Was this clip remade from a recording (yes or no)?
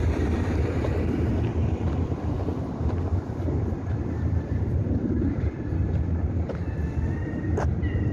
yes